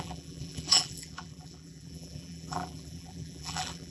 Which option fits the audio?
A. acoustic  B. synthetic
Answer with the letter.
B